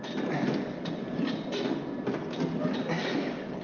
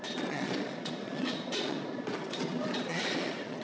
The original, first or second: first